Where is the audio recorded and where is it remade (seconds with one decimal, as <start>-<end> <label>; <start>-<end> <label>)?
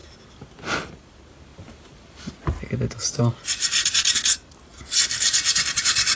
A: 0.0-6.2 recorded